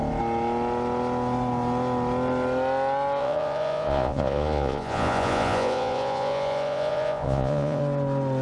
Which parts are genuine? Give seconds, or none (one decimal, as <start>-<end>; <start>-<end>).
0.0-3.2; 7.8-8.4